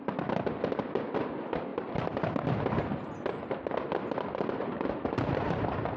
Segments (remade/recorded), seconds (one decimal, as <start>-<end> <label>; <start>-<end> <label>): 0.0-1.7 recorded; 1.7-2.3 remade; 2.3-4.6 recorded; 4.6-6.0 remade